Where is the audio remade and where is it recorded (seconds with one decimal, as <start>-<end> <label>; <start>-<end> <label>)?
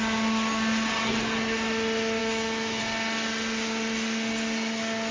0.0-2.2 recorded; 2.2-2.8 remade; 2.8-5.1 recorded